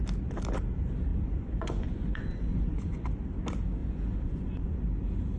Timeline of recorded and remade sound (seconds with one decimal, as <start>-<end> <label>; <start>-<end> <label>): 0.0-1.1 recorded; 1.1-3.1 remade; 3.1-3.8 recorded; 3.8-4.8 remade; 4.8-5.4 recorded